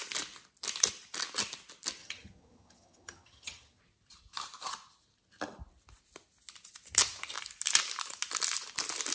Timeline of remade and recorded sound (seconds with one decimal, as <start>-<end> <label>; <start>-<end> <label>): 0.0-2.0 recorded; 2.0-3.8 remade; 3.8-9.1 recorded